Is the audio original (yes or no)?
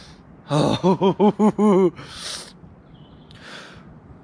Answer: yes